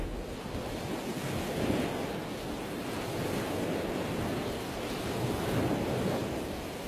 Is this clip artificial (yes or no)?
no